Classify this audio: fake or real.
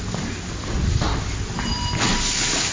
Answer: real